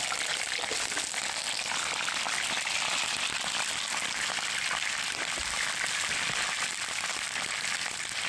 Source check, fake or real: real